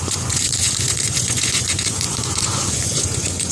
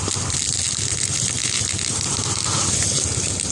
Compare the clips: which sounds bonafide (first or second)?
second